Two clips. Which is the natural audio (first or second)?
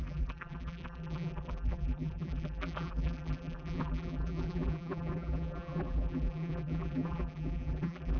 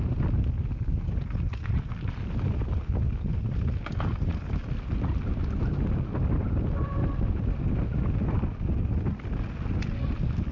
second